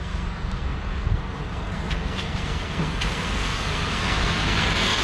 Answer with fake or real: fake